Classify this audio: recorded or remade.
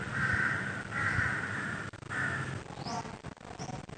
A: recorded